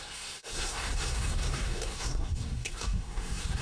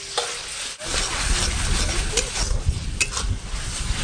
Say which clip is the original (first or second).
second